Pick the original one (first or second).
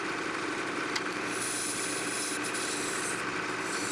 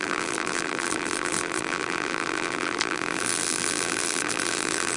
first